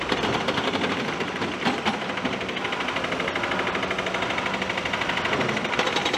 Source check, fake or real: real